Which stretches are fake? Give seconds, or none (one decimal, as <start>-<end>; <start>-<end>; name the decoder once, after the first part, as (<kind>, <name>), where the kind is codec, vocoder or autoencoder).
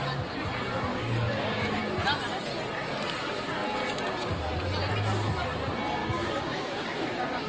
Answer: 0.9-1.8 (codec, DAC); 6.0-7.5